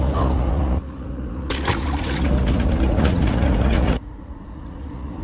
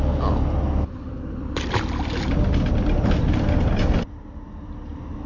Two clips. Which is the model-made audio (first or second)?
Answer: first